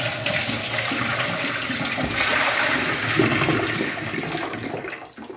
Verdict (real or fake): real